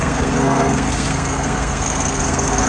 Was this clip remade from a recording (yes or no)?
yes